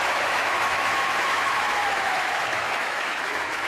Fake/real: fake